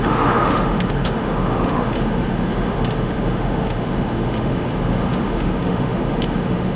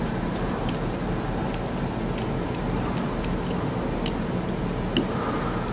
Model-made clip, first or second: first